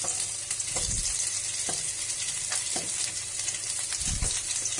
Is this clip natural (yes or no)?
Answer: yes